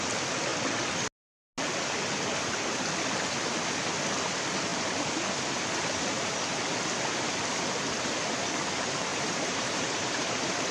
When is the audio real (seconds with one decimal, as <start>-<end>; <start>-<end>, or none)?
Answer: 0.0-9.1